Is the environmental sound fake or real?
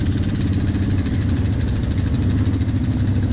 real